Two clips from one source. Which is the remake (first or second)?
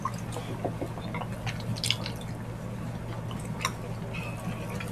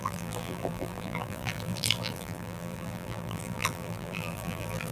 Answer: second